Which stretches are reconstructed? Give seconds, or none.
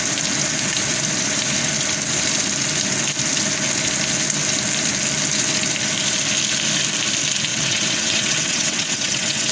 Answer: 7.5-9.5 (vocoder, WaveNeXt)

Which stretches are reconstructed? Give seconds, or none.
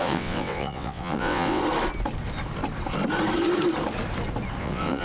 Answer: 0.0-1.6 (vocoder, WaveNeXt); 4.6-5.0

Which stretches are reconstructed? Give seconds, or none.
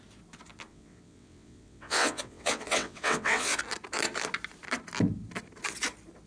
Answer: 0.7-3.6 (vocoder, WaveNeXt)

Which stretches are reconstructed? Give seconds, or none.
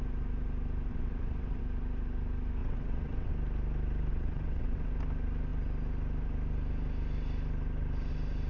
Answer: 0.9-1.6 (vocoder, WaveNeXt); 2.6-3.3; 4.1-4.9